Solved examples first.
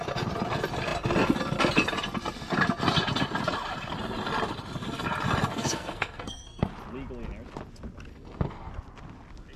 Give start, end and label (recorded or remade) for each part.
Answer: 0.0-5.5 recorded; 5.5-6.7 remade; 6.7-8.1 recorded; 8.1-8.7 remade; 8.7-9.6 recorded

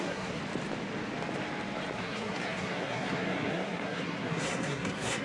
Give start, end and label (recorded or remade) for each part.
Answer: 0.0-0.4 remade; 0.4-2.0 recorded; 2.0-5.2 remade